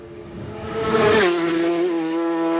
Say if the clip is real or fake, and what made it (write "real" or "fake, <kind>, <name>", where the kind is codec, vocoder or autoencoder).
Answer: fake, codec, DAC